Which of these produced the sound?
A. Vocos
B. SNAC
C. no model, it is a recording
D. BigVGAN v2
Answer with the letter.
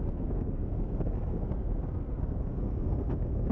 B